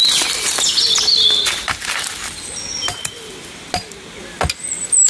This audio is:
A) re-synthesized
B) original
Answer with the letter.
B